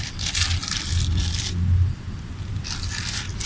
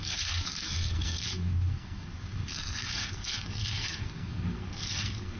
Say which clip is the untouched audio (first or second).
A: first